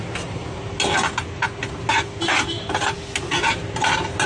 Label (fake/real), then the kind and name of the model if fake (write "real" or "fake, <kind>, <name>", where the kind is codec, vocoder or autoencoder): real